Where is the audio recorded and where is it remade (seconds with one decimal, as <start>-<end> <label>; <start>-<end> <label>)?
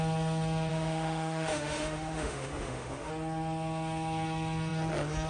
0.0-0.7 recorded; 0.7-3.1 remade; 3.1-5.3 recorded